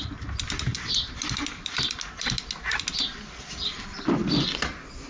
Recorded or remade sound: recorded